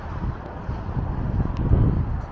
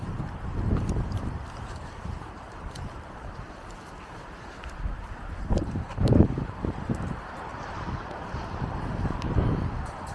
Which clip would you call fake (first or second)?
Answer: second